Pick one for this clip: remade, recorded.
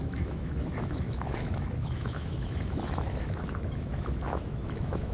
remade